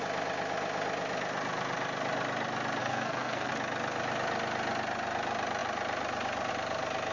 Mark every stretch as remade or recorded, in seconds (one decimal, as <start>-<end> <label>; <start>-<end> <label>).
0.0-2.8 recorded; 2.8-3.5 remade; 3.5-7.1 recorded